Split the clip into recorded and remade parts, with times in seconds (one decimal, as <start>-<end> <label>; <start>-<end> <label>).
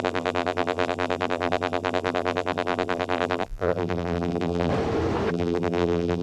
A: 0.0-4.7 remade; 4.7-5.3 recorded; 5.3-6.2 remade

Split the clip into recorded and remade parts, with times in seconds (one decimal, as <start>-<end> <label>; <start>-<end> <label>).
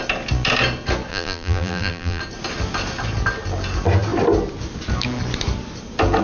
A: 0.0-1.1 recorded; 1.1-2.2 remade; 2.2-6.2 recorded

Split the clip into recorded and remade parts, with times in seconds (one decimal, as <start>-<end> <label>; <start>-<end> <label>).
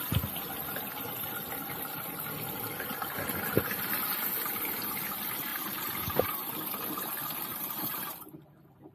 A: 0.0-5.5 recorded; 5.5-6.5 remade; 6.5-7.5 recorded; 7.5-8.3 remade; 8.3-8.9 recorded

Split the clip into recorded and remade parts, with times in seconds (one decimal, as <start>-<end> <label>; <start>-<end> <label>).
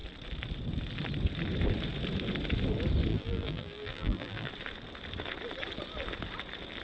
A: 0.0-3.1 recorded; 3.1-4.5 remade; 4.5-6.8 recorded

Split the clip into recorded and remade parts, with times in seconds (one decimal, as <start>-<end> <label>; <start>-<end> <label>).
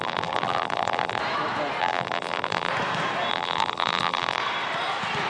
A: 0.0-1.2 remade; 1.2-1.8 recorded; 1.8-2.7 remade; 2.7-3.3 recorded; 3.3-4.4 remade; 4.4-5.3 recorded